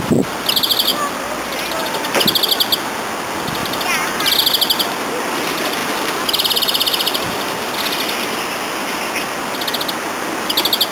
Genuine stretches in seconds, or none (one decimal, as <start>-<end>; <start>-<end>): 0.0-3.6; 4.3-10.9